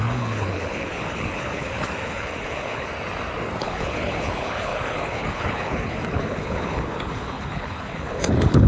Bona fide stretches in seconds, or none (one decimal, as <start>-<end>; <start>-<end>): 2.9-3.6